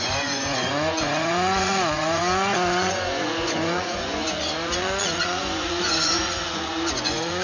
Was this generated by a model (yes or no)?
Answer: yes